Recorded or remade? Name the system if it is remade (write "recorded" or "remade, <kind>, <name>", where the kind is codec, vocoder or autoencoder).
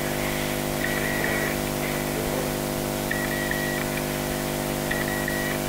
recorded